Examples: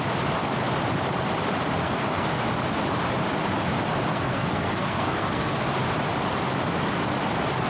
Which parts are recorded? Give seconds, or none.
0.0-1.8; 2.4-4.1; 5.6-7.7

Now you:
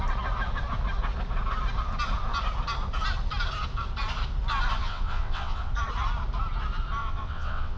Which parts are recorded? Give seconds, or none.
0.0-4.8; 5.7-7.0

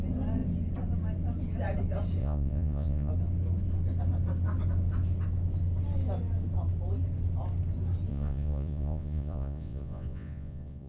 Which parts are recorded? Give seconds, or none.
0.0-2.2; 3.1-8.1

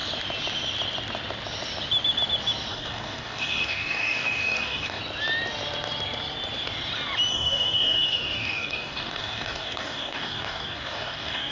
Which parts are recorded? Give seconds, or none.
0.0-2.7; 5.0-7.3

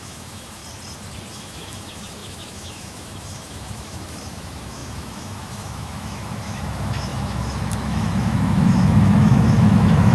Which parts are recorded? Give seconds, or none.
0.6-1.3

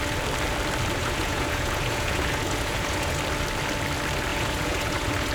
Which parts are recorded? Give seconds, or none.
0.0-1.0; 3.2-4.3